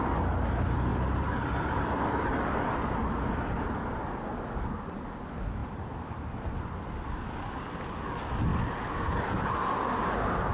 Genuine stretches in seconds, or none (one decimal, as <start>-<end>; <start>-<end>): 0.0-0.9; 2.3-5.6; 7.1-10.5